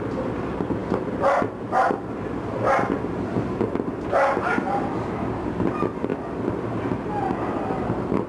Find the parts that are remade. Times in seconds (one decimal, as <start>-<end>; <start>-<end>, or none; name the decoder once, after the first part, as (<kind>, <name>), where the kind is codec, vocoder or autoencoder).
6.1-6.8 (vocoder, BigVGAN v2)